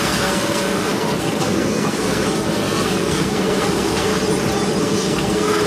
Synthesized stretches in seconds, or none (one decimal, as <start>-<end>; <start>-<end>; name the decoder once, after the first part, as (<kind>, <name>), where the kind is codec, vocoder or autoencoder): 0.0-4.1 (codec, SNAC); 4.8-5.7